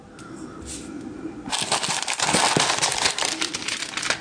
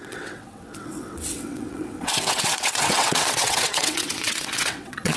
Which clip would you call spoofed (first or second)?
second